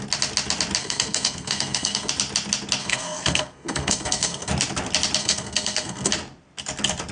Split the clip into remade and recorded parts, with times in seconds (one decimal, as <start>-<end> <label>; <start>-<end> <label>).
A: 0.0-0.8 recorded; 0.8-2.1 remade; 2.1-2.8 recorded; 2.8-4.5 remade; 4.5-5.2 recorded; 5.2-6.1 remade; 6.1-7.1 recorded